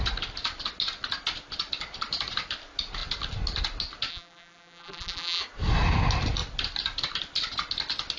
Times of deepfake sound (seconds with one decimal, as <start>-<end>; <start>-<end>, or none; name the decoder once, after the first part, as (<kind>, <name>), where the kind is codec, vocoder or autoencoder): 4.1-5.4 (vocoder, BigVGAN v2)